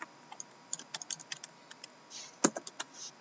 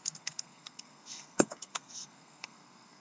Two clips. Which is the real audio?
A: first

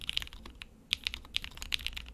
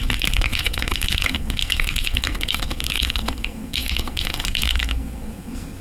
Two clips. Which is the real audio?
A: first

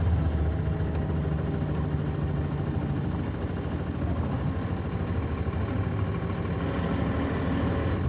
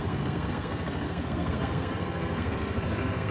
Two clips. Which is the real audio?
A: first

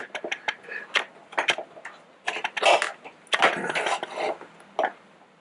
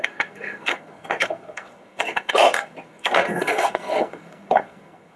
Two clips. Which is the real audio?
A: first